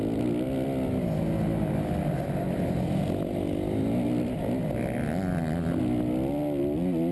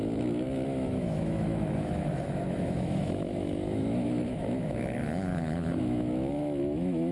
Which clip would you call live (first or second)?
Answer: first